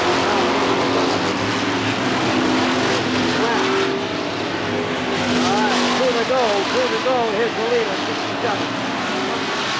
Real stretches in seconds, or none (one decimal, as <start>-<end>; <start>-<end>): 0.0-7.0; 8.0-9.8